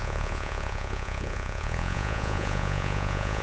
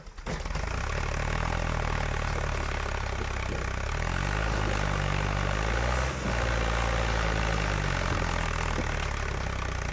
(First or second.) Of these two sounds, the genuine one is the second